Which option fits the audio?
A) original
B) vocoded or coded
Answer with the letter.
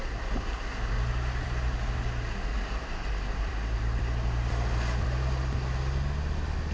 A